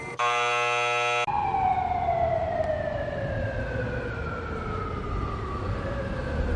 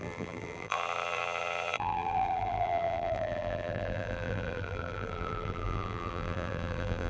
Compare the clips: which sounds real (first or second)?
first